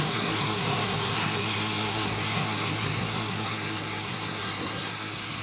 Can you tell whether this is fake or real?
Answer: fake